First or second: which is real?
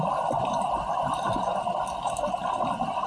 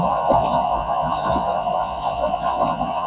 first